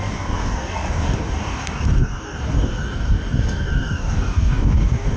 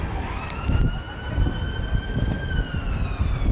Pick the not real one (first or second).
first